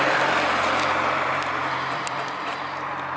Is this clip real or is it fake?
fake